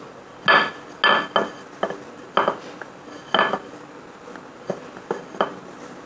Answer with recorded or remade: recorded